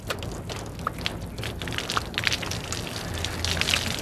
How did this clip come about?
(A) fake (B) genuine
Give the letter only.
B